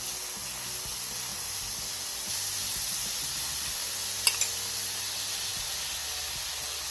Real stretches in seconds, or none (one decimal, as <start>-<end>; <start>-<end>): 0.0-1.3; 3.9-6.9